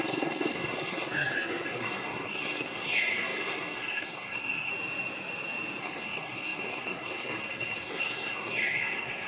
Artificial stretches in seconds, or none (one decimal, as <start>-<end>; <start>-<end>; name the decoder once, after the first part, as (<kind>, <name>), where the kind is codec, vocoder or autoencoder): 0.0-4.7 (codec, SNAC); 5.8-9.3